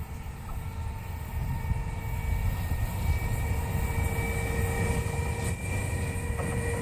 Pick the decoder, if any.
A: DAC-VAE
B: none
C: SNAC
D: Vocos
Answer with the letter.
B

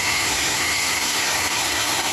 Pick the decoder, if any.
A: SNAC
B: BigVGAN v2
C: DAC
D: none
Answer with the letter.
A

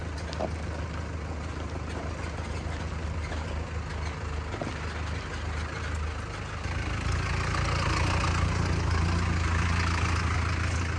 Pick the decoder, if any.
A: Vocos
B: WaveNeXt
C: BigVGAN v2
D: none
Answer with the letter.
D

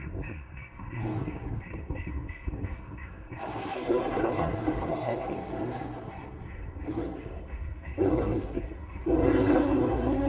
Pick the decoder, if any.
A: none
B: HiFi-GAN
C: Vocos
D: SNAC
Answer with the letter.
D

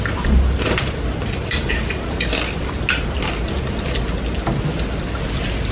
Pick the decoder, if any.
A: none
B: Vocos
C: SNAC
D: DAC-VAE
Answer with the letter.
A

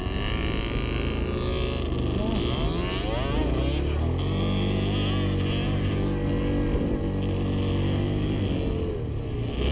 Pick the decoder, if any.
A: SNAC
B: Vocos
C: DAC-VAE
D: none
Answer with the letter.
D